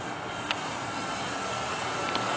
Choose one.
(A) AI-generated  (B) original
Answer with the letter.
B